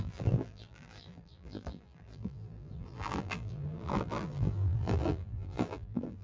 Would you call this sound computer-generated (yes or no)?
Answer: yes